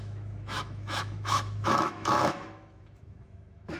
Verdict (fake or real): fake